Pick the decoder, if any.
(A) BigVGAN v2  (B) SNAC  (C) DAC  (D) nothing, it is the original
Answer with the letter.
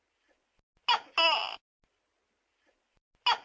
D